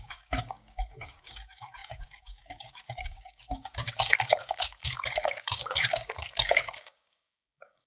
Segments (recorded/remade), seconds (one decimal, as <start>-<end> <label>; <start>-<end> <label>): 0.0-7.9 remade